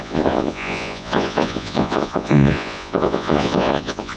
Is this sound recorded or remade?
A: remade